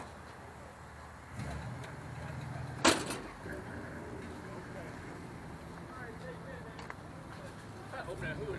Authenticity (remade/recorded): recorded